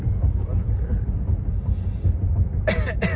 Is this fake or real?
real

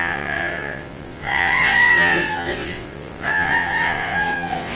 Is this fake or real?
fake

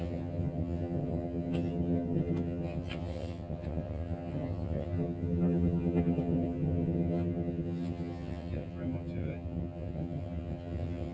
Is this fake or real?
fake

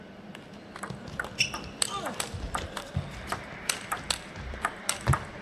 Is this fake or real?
fake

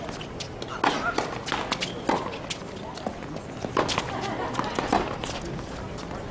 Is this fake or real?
real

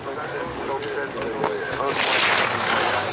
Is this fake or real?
real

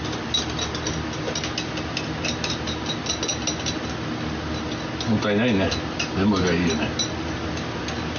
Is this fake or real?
real